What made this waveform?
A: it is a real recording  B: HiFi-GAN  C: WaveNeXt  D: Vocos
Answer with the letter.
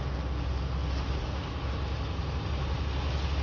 A